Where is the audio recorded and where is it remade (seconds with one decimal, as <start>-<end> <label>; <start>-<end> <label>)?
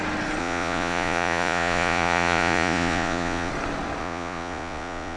0.0-0.4 recorded; 0.4-3.5 remade; 3.5-4.0 recorded; 4.0-5.2 remade